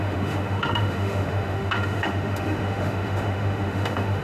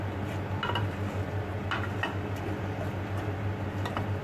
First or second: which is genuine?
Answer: second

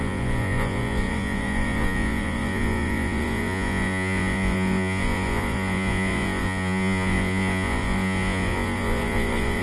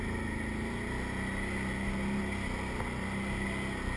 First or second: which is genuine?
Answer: second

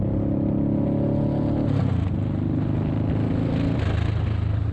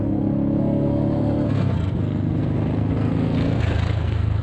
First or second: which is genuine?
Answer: first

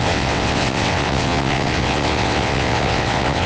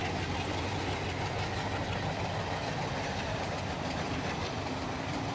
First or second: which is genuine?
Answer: second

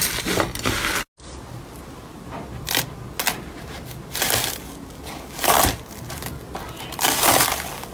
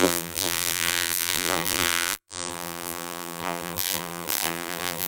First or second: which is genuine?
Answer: first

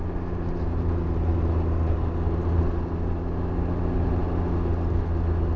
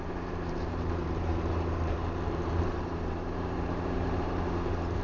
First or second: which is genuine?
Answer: first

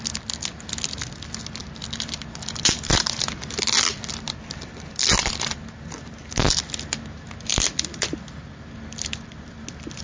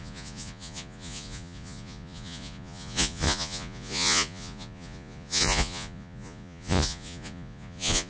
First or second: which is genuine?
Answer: first